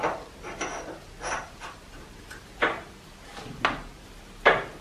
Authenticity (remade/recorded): recorded